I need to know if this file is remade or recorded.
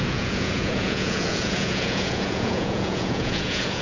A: remade